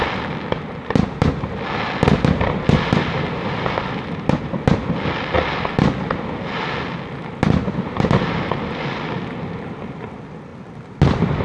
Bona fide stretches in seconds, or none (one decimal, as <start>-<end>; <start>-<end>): 0.0-11.4